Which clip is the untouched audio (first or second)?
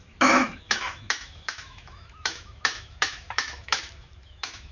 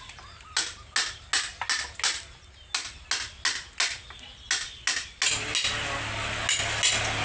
second